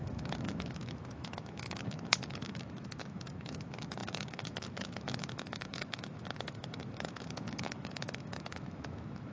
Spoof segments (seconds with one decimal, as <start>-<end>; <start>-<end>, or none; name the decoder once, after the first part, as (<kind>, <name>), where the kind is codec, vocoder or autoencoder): 0.0-9.3 (autoencoder, DAC-VAE)